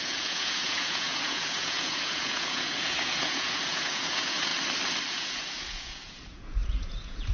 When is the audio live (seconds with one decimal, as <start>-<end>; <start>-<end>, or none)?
4.5-5.1